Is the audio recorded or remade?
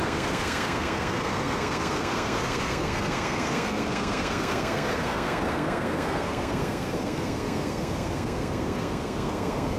remade